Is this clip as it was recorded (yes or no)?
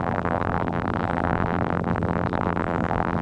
no